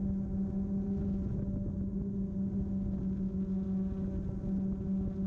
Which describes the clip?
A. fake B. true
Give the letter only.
B